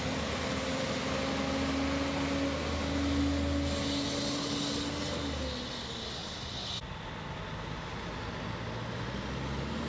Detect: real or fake real